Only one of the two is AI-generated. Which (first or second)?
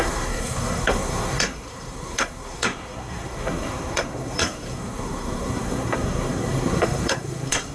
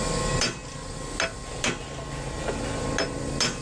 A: first